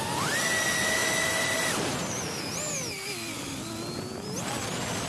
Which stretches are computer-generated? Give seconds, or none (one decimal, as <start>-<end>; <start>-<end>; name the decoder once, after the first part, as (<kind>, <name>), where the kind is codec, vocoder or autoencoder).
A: none